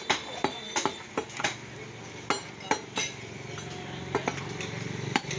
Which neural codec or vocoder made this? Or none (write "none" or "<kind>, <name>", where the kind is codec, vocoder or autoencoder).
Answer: none